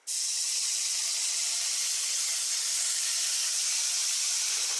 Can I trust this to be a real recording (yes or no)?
yes